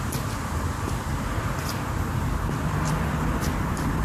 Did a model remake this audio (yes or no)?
yes